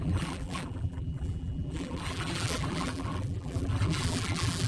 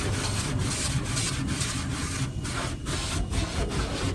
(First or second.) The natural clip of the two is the second